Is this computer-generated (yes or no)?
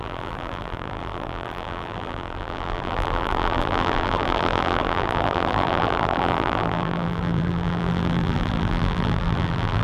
yes